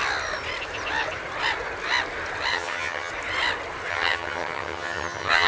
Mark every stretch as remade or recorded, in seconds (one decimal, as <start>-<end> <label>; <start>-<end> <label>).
0.0-2.5 recorded; 2.5-3.1 remade; 3.1-3.9 recorded; 3.9-5.5 remade